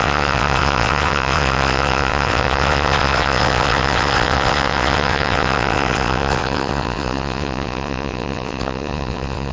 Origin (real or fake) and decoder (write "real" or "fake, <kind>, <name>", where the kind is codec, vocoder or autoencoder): fake, vocoder, WaveNeXt